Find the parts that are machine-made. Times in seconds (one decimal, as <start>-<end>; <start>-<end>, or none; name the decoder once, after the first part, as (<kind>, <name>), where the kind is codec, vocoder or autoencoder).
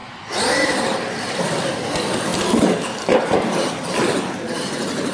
none